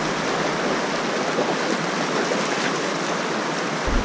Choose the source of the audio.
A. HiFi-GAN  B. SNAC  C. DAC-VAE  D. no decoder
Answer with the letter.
D